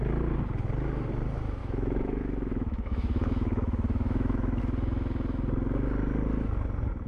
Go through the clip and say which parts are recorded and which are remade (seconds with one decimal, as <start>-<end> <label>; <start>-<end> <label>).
0.0-1.6 recorded; 1.6-4.6 remade; 4.6-7.1 recorded